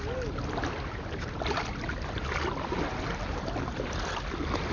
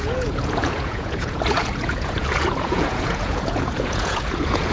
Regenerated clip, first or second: second